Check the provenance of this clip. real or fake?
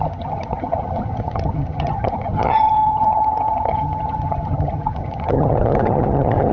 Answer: fake